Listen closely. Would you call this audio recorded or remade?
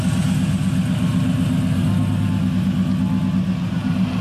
recorded